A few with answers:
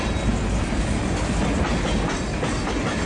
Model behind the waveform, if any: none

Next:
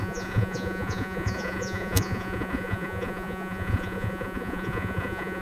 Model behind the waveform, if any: vocoder, Vocos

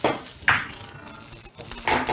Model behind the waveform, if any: none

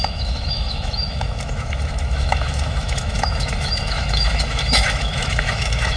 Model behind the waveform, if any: autoencoder, DAC-VAE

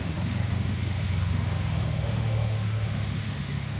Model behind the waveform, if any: autoencoder, DAC-VAE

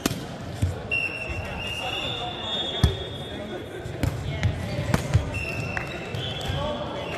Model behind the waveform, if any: none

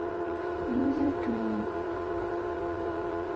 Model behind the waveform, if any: vocoder, Vocos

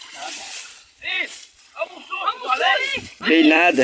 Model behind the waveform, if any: vocoder, Vocos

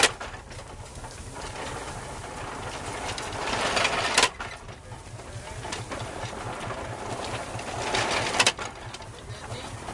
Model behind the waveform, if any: none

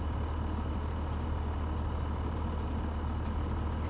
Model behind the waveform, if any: none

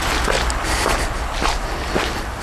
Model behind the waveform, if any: none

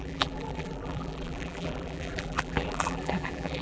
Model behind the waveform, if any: vocoder, BigVGAN v2